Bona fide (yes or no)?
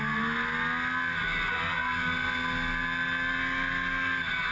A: yes